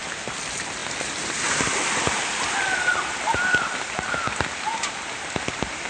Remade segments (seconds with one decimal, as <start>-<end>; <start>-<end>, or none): none